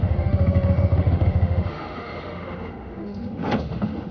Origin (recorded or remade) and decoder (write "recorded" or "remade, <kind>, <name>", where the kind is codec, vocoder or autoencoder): remade, autoencoder, DAC-VAE